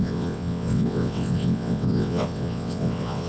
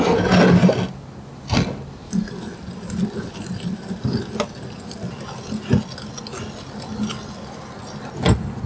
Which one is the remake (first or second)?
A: first